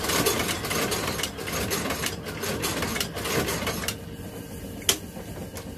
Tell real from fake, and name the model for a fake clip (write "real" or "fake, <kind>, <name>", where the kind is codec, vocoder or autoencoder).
real